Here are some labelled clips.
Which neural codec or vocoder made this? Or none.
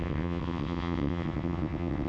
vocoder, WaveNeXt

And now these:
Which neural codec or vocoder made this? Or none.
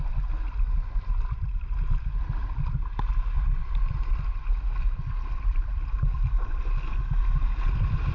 none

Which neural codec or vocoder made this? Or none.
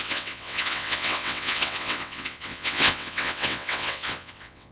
vocoder, WaveNeXt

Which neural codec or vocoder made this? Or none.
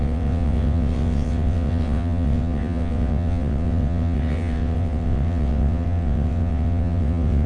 vocoder, WaveNeXt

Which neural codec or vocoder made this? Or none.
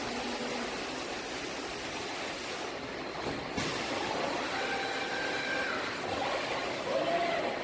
none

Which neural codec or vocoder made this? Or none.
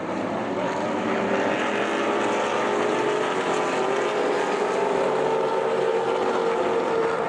none